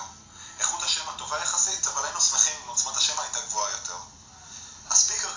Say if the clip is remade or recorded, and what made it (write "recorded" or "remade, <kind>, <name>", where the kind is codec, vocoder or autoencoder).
recorded